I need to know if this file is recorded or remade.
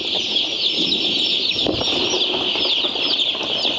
recorded